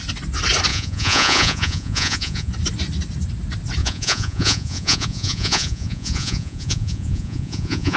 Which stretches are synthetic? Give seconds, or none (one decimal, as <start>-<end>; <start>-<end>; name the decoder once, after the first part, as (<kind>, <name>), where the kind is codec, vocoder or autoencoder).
0.7-2.5 (vocoder, Vocos); 3.8-8.0